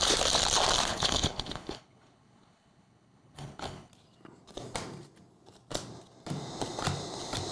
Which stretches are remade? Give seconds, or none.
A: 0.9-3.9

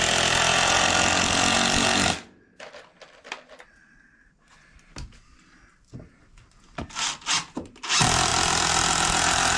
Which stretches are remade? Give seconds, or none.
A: none

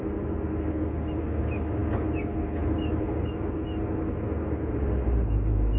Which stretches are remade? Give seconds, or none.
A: none

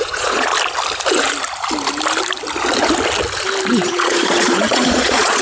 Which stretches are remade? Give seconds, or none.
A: 0.0-0.5; 3.7-5.4

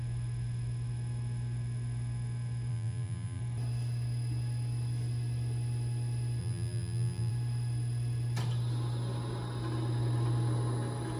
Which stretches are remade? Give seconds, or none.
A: 2.7-3.4; 6.4-7.3

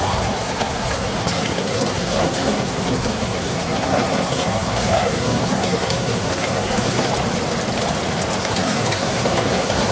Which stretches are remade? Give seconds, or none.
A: 0.0-7.1; 8.4-9.9

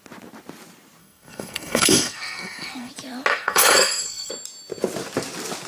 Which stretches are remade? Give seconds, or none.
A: 1.0-2.9; 3.3-4.3

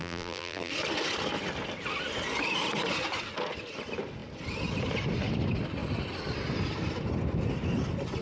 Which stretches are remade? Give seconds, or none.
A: 0.0-0.7